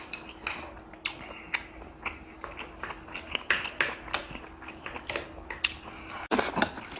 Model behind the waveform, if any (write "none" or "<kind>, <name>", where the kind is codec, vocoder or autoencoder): none